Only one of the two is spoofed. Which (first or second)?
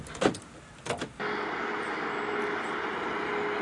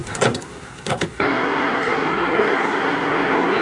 second